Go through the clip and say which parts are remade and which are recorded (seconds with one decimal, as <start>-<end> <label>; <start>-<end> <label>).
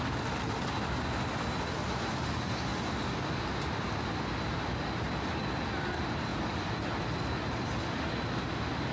0.0-8.9 recorded